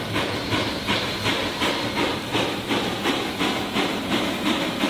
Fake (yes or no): no